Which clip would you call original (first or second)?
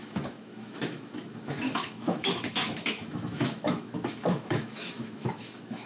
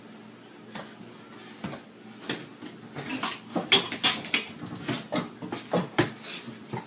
second